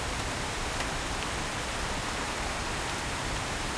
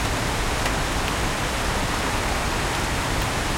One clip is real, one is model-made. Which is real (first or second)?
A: second